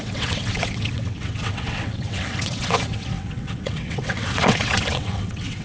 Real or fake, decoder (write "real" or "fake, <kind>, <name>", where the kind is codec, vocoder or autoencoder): fake, vocoder, WaveNeXt